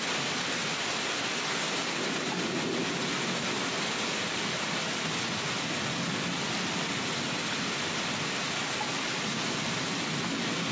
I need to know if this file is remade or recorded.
recorded